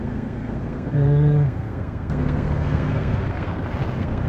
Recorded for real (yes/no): no